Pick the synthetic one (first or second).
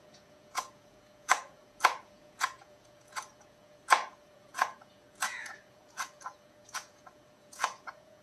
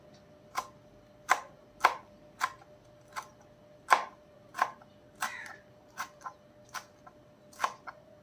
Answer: first